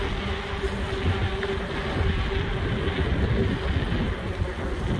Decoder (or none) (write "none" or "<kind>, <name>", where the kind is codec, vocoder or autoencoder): none